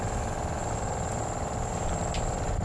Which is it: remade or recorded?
recorded